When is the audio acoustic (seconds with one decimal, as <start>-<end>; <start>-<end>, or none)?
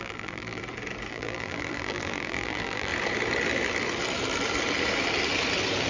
0.6-1.1; 2.9-5.9